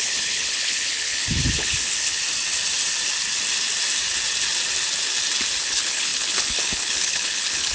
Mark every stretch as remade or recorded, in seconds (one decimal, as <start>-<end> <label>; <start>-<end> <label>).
0.0-2.2 remade; 2.2-5.6 recorded; 5.6-7.7 remade